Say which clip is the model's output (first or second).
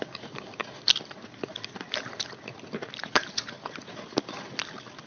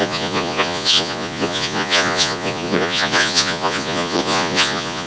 second